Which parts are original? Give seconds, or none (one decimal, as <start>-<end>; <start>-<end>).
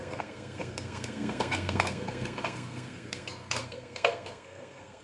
none